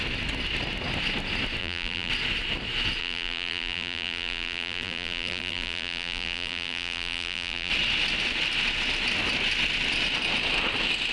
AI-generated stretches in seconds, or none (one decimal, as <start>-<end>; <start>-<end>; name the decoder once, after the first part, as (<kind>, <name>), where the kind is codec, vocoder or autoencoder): 1.6-2.1 (vocoder, BigVGAN v2); 3.0-7.7